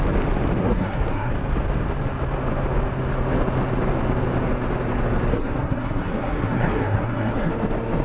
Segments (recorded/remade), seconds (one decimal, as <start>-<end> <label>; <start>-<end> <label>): 0.0-0.6 recorded; 0.6-1.3 remade; 1.3-5.3 recorded; 5.3-7.5 remade; 7.5-8.0 recorded